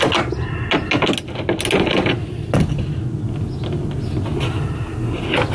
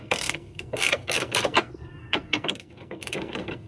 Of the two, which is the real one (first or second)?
first